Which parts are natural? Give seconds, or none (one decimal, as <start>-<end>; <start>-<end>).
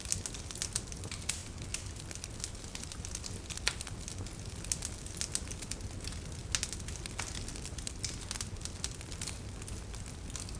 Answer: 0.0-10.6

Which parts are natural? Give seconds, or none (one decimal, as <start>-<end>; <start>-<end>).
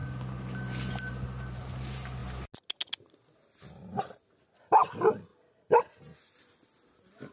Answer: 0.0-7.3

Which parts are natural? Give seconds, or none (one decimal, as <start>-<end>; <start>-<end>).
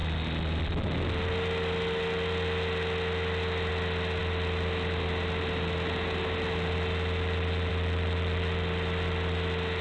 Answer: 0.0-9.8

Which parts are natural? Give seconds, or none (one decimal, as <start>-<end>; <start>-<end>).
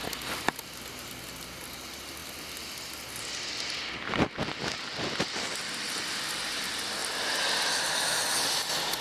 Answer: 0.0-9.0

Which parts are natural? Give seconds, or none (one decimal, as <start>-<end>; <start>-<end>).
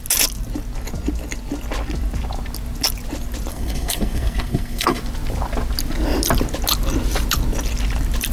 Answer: 0.0-3.5; 5.0-8.3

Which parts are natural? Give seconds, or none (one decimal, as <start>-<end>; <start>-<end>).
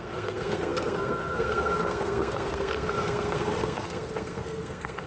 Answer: none